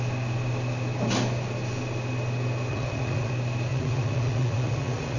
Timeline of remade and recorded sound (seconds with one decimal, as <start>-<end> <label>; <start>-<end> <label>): 0.0-2.7 recorded; 2.7-3.3 remade; 3.3-3.7 recorded; 3.7-5.2 remade